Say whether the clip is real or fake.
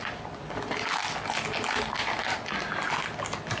real